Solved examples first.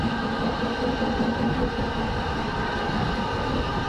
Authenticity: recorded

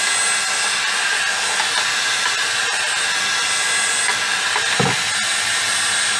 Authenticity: recorded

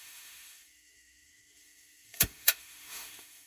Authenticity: remade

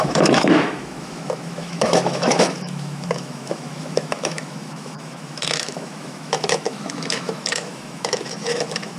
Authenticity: remade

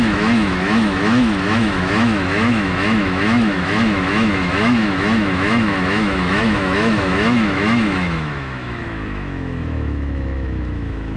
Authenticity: remade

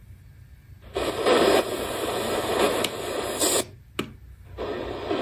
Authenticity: recorded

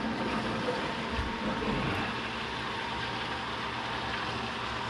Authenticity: recorded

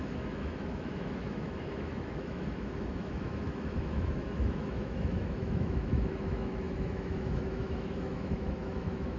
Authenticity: remade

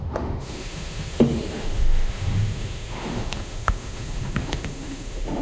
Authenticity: remade